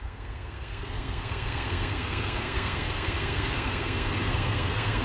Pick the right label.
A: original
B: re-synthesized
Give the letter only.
B